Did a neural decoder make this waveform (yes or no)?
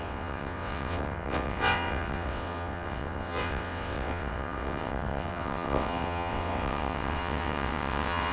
yes